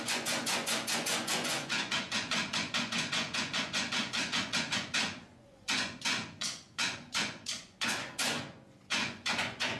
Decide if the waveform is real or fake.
fake